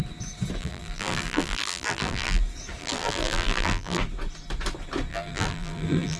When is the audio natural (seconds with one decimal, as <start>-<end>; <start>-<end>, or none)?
0.0-0.6; 2.4-2.8; 4.0-5.1